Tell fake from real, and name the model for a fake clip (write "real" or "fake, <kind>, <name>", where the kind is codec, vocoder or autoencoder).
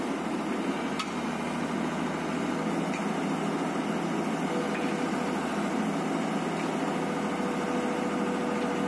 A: real